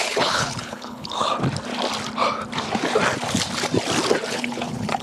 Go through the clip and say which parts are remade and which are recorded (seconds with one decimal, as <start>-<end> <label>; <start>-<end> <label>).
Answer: 0.0-1.3 remade; 1.3-4.3 recorded; 4.3-5.0 remade